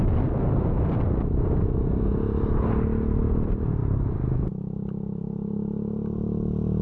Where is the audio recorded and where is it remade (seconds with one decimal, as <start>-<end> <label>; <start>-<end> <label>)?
0.0-6.8 recorded